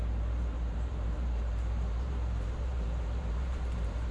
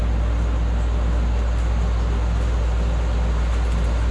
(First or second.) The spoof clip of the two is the first